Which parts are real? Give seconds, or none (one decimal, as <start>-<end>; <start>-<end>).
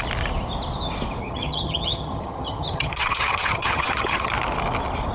0.0-1.2; 4.3-5.1